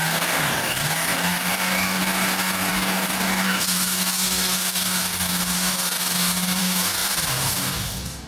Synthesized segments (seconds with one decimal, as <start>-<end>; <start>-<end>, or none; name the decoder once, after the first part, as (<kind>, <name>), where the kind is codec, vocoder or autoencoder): 0.0-8.3 (codec, DAC)